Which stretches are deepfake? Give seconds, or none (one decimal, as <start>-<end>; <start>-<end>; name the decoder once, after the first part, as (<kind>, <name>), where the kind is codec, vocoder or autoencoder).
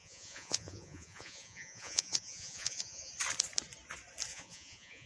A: 0.0-3.1 (vocoder, Vocos); 4.3-5.1